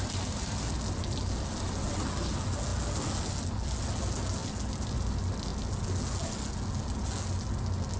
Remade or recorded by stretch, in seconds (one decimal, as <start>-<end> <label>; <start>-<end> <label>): 0.0-8.0 recorded